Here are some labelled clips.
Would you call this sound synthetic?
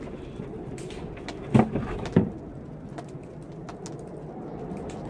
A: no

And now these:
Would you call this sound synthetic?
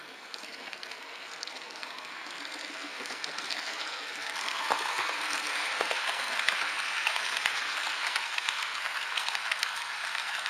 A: yes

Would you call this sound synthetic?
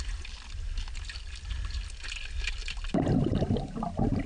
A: no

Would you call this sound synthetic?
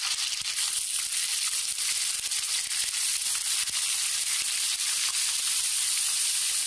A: no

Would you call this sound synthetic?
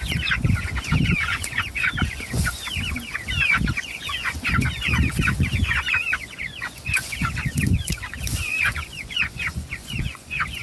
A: yes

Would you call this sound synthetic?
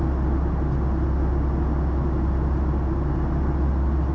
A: no